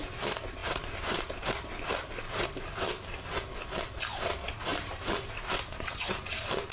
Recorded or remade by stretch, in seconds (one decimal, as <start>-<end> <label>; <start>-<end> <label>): 0.0-6.7 remade